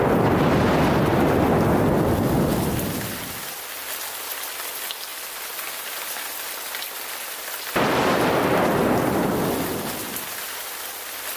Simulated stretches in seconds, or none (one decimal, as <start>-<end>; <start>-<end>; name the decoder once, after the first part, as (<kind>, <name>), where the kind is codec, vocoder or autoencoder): none

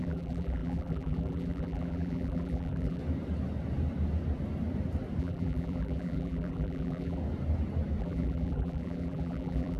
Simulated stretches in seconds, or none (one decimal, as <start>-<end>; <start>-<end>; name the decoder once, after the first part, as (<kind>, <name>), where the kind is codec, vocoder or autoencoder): 0.0-3.0 (vocoder, BigVGAN v2); 5.2-7.2; 8.0-9.8

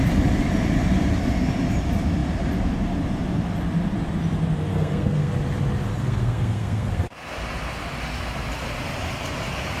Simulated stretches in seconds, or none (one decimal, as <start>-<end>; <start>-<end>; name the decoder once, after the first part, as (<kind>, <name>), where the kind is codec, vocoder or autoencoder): 4.7-5.3 (codec, SNAC); 5.9-7.0

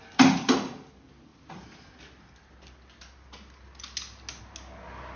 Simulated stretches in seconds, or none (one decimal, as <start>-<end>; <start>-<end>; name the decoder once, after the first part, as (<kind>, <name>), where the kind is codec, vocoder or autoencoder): none

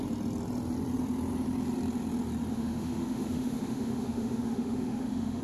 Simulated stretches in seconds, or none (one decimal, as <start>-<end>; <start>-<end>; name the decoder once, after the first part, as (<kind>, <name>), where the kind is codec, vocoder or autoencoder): 2.5-5.4 (autoencoder, DAC-VAE)

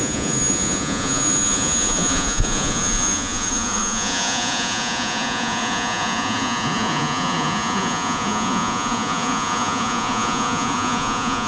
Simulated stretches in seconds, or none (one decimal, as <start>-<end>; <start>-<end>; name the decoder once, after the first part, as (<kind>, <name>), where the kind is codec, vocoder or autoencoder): 0.0-11.5 (vocoder, Vocos)